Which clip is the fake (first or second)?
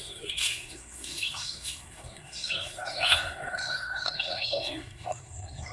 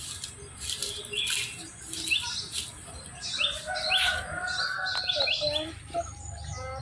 first